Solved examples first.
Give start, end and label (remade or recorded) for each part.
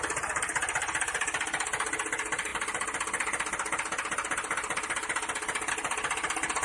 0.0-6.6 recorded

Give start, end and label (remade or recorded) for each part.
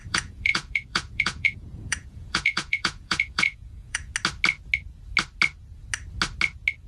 0.0-4.1 remade; 4.1-6.9 recorded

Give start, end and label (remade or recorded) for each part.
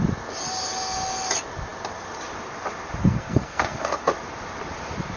0.0-3.0 recorded; 3.0-4.1 remade; 4.1-5.2 recorded